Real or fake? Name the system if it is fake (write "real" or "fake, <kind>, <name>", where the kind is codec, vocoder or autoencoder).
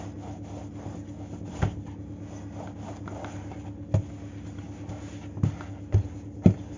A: real